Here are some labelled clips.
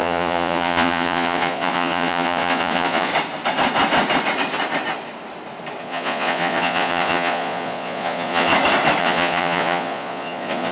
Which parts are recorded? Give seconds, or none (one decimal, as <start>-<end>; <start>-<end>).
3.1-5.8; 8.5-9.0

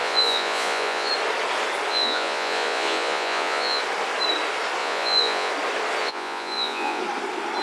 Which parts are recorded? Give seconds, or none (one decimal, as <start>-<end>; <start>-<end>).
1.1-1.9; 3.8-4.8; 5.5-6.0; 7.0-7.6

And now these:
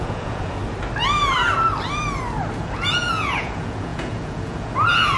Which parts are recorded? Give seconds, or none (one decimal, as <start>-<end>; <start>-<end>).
0.6-2.6